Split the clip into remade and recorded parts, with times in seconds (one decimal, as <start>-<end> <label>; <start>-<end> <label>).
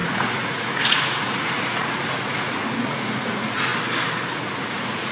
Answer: 0.0-3.7 remade; 3.7-4.3 recorded; 4.3-5.1 remade